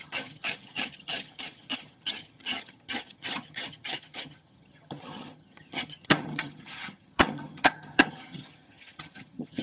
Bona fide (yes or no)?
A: no